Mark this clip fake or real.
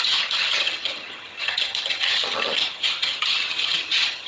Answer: fake